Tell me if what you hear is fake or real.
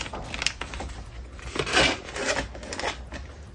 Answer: real